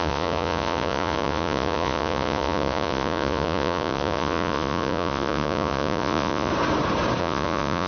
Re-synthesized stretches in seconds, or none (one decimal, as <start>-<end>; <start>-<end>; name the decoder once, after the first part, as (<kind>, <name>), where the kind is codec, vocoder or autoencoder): 0.0-6.5 (vocoder, Vocos); 7.2-7.9